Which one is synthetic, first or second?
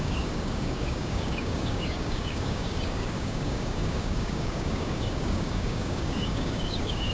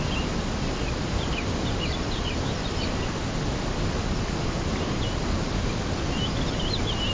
first